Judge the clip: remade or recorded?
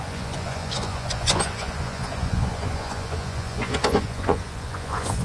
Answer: remade